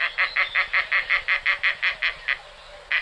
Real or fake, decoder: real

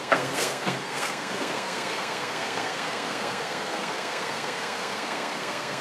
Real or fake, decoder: fake, codec, SNAC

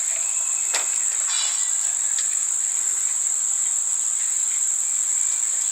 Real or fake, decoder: real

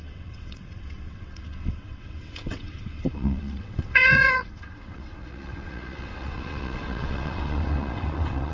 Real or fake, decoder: fake, vocoder, WaveNeXt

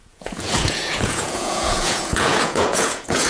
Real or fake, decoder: fake, vocoder, Vocos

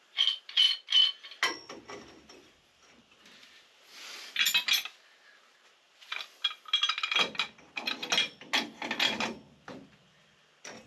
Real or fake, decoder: real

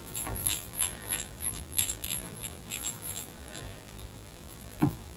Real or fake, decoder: fake, vocoder, BigVGAN v2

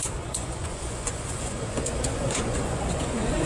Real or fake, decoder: fake, vocoder, Vocos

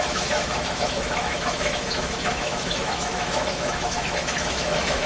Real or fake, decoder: fake, autoencoder, DAC-VAE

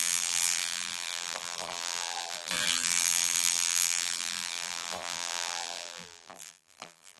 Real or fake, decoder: fake, vocoder, BigVGAN v2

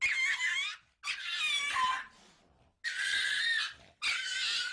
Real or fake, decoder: real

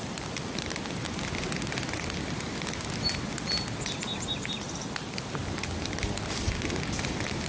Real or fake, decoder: real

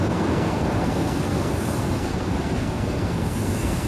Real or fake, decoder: fake, codec, SNAC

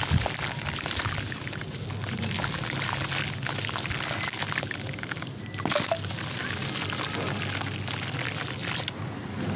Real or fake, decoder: real